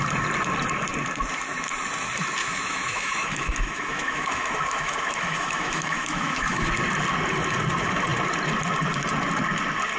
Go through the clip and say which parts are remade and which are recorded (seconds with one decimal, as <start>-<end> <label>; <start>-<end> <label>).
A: 0.0-2.4 recorded; 2.4-6.7 remade; 6.7-10.0 recorded